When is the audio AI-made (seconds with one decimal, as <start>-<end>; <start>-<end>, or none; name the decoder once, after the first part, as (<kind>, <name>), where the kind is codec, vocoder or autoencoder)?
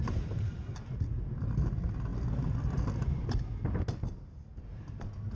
none